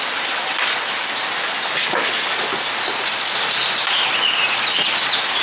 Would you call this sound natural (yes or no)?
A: yes